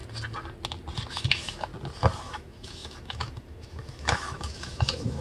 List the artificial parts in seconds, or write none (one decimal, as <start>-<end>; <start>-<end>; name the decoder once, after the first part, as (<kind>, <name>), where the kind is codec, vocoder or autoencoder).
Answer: 1.1-1.7 (autoencoder, DAC-VAE); 2.2-5.2